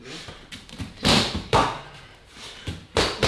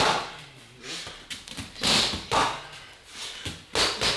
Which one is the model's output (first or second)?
first